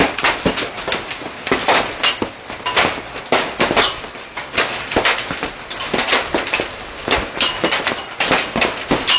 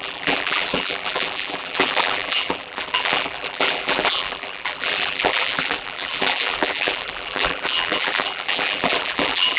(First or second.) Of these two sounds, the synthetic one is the second